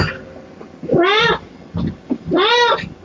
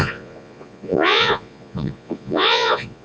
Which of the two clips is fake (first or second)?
second